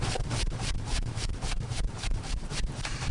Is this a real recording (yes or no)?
no